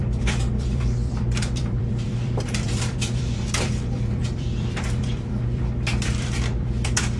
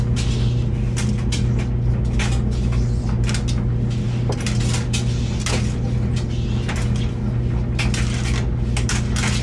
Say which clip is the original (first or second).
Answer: second